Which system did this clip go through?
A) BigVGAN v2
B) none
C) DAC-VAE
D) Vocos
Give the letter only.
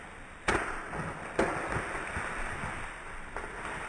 B